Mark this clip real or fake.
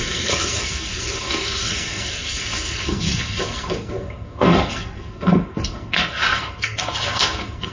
fake